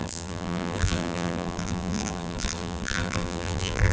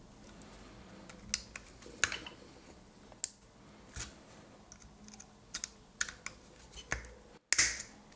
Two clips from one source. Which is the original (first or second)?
second